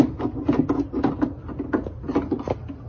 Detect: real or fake real